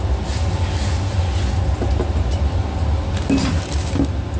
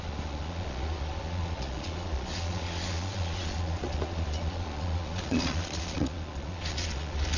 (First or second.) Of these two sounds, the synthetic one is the second